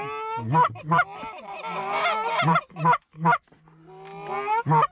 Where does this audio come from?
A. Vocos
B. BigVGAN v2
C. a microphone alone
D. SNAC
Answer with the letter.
C